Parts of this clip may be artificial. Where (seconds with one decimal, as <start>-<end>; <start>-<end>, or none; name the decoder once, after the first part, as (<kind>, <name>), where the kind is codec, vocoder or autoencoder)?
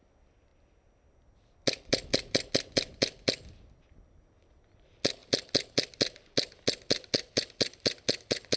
none